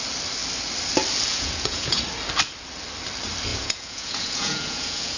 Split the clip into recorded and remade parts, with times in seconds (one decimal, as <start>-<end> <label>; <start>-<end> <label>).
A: 0.0-1.3 recorded; 1.3-2.0 remade; 2.0-3.5 recorded; 3.5-5.2 remade